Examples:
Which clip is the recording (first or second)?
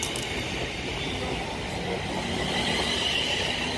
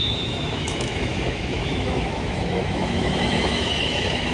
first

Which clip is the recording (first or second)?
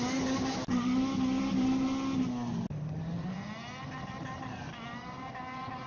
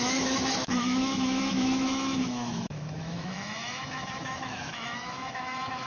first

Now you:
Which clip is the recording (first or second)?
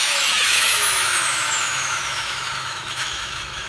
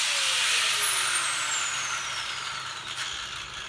second